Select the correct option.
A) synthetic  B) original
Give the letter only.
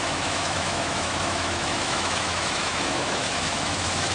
A